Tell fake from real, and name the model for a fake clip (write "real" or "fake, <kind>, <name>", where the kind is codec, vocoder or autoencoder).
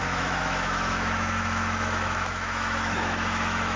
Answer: fake, autoencoder, DAC-VAE